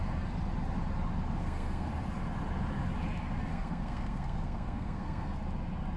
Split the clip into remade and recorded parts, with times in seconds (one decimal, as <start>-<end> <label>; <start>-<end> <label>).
0.0-1.4 recorded; 1.4-1.9 remade; 1.9-3.5 recorded; 3.5-5.4 remade; 5.4-6.0 recorded